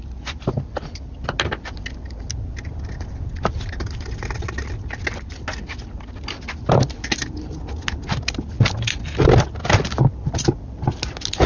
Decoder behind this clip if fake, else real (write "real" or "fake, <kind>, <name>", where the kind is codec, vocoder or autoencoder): real